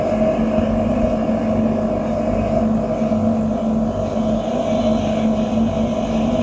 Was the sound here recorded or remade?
recorded